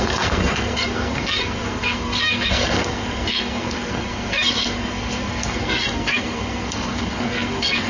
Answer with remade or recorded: remade